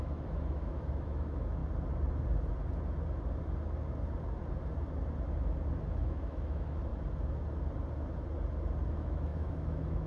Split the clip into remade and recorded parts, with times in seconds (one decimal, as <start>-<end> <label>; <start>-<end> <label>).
0.0-1.6 remade; 1.6-5.9 recorded; 5.9-6.9 remade; 6.9-8.9 recorded; 8.9-10.1 remade